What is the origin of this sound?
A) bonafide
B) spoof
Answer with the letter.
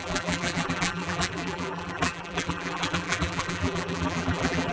B